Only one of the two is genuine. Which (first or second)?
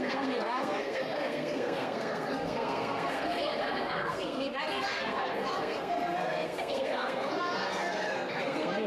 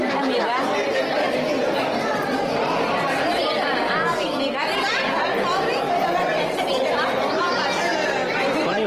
second